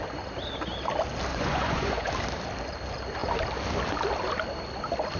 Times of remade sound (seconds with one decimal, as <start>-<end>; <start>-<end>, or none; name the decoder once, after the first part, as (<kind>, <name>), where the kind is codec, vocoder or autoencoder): 1.3-2.1 (vocoder, Vocos)